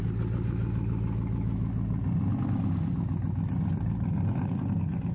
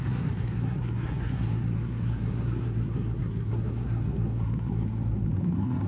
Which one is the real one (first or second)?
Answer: first